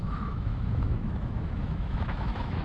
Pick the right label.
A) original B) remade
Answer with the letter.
B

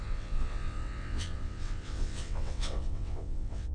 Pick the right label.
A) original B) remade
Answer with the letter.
B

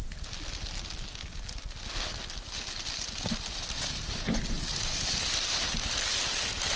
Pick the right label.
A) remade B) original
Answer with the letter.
B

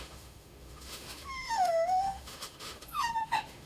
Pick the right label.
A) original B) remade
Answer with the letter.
B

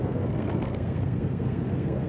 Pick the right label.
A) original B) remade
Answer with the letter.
B